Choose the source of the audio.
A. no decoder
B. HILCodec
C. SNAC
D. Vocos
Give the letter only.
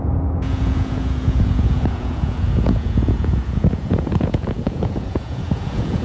D